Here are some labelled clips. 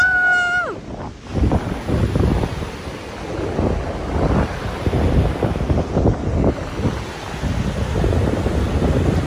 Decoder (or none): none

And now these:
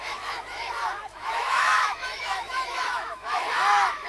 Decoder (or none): autoencoder, DAC-VAE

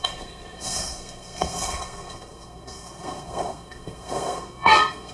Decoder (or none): codec, SNAC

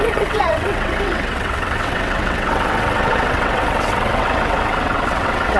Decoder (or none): vocoder, WaveNeXt